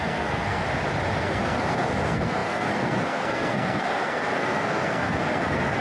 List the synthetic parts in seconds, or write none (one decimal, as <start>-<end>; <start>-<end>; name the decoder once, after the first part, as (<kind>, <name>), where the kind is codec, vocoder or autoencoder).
0.0-0.6 (codec, SNAC); 1.2-5.8